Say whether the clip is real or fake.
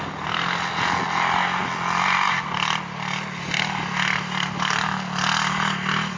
real